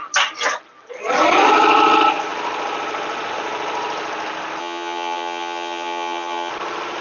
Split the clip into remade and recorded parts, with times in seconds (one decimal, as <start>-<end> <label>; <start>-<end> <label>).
0.0-4.6 recorded; 4.6-6.5 remade; 6.5-7.0 recorded